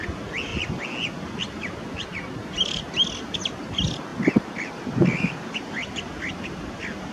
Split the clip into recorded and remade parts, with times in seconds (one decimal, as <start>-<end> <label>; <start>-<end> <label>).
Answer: 0.0-7.1 recorded